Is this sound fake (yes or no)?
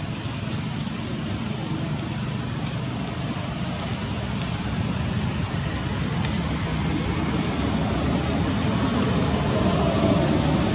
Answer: no